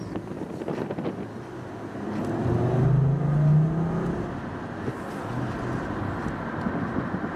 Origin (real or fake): real